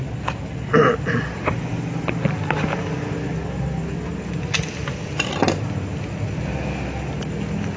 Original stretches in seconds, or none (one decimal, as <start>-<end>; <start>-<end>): 0.0-7.8